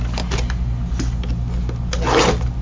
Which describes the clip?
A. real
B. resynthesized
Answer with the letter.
A